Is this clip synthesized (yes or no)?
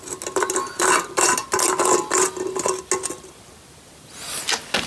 no